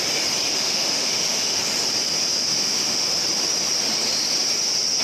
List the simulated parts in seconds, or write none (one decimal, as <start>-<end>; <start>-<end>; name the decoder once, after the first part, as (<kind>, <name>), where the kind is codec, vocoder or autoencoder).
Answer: 0.5-1.6 (autoencoder, DAC-VAE); 2.5-3.2